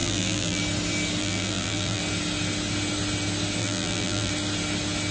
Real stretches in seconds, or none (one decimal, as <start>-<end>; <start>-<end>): 0.6-1.2; 2.0-3.6; 4.3-5.1